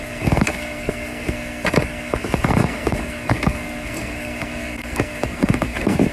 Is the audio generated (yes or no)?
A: yes